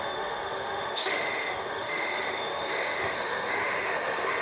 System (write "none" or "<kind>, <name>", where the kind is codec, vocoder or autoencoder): autoencoder, DAC-VAE